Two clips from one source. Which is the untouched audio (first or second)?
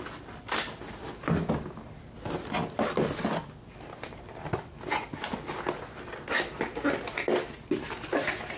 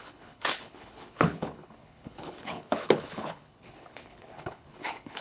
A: first